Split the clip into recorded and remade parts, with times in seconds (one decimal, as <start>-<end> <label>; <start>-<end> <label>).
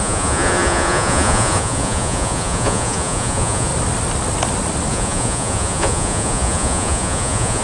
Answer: 0.0-3.7 remade; 3.7-4.9 recorded; 4.9-7.6 remade